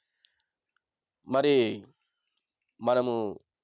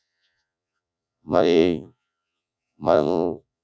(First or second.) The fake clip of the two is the second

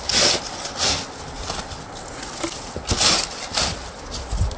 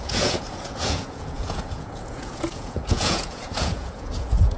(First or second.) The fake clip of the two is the second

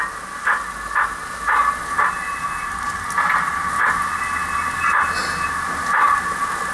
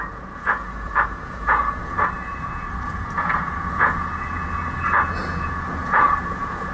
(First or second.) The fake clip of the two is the second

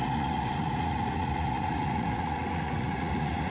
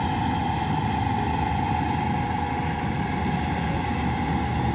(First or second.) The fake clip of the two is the first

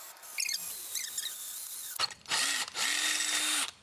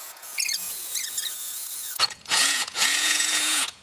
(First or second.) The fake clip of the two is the second